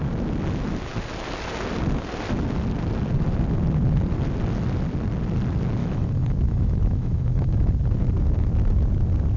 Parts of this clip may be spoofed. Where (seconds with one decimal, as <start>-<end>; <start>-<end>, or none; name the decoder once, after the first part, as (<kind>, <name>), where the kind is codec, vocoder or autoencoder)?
5.8-7.7 (autoencoder, DAC-VAE)

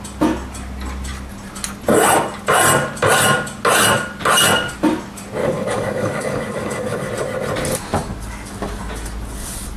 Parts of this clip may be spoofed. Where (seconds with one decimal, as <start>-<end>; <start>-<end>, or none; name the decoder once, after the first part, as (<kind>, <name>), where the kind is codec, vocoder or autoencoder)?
5.4-7.1 (codec, DAC)

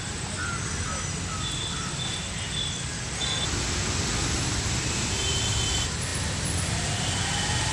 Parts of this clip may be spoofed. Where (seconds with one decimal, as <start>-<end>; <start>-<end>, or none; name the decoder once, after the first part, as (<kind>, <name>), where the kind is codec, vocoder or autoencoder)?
none

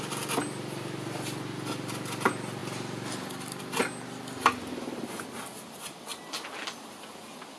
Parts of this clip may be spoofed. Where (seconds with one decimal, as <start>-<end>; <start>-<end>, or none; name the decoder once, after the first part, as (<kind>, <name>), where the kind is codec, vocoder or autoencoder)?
none

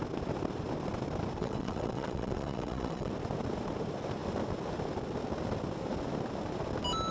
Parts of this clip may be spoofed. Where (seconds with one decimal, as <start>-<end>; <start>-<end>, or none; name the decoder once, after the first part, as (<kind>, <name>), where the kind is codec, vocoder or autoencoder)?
1.4-3.1 (vocoder, WaveNeXt)